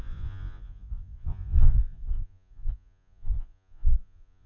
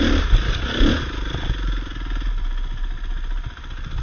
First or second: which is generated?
first